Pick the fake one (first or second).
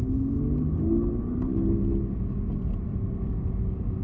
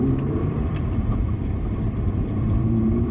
second